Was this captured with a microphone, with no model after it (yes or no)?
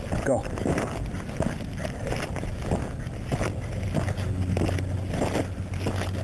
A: yes